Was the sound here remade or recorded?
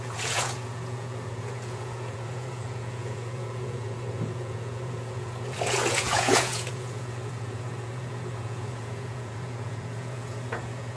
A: remade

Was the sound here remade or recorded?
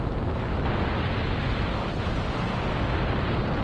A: recorded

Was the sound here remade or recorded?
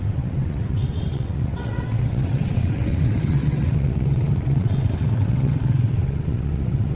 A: remade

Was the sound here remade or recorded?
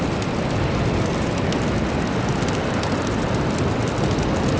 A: recorded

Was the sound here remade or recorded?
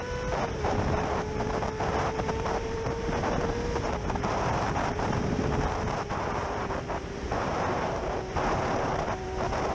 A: remade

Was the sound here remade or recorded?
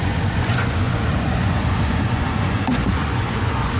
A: remade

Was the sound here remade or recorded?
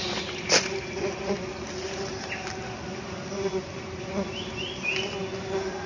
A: recorded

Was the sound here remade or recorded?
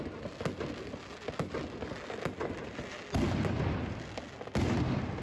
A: recorded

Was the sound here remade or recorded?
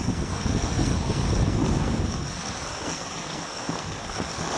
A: remade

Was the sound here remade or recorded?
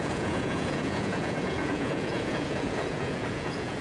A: remade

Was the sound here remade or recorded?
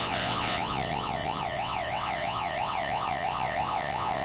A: remade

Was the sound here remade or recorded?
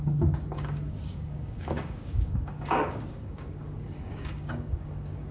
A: remade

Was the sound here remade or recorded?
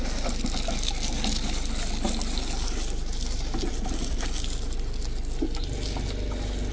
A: recorded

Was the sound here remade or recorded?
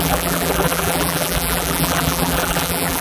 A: remade